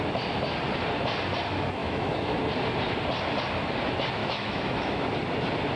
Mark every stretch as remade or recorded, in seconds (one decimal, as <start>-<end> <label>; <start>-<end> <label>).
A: 0.0-1.8 recorded; 1.8-2.4 remade; 2.4-4.2 recorded; 4.2-5.1 remade; 5.1-5.8 recorded

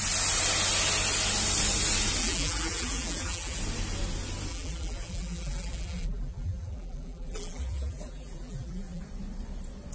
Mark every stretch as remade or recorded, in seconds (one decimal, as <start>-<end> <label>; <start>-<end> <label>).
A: 0.0-2.2 recorded; 2.2-3.6 remade; 3.6-4.5 recorded; 4.5-9.0 remade; 9.0-9.9 recorded

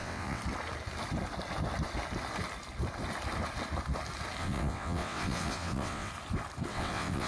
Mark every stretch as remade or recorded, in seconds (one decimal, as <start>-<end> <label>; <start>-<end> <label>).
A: 0.0-0.4 remade; 0.4-4.4 recorded; 4.4-6.1 remade; 6.1-6.7 recorded; 6.7-7.3 remade

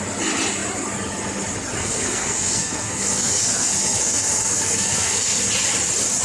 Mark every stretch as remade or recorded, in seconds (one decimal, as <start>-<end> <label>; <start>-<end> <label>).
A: 0.0-1.8 recorded; 1.8-5.5 remade; 5.5-6.2 recorded

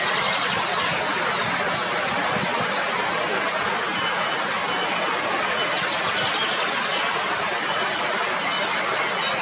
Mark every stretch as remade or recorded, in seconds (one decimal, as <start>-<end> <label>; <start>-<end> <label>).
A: 0.0-9.4 recorded

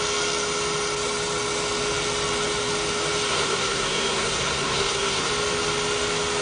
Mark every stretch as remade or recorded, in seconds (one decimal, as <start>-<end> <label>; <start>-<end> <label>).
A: 0.0-3.3 recorded; 3.3-5.3 remade; 5.3-6.4 recorded

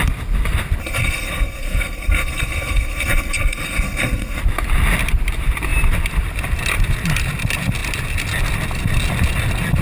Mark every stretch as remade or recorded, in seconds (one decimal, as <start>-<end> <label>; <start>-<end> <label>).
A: 0.0-0.8 recorded; 0.8-4.4 remade; 4.4-9.8 recorded